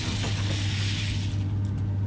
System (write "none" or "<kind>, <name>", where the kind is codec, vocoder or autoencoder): none